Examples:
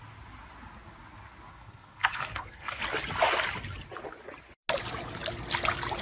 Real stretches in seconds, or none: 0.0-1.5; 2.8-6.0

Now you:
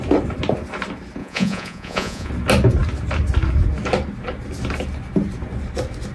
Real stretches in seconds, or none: 0.0-1.2; 2.3-6.1

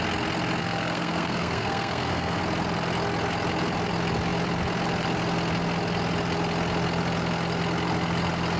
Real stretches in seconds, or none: 0.0-0.6; 2.4-8.6

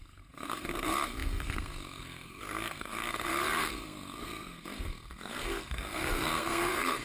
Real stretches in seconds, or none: none

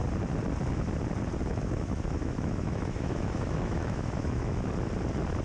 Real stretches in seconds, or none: 0.0-1.5; 4.7-5.4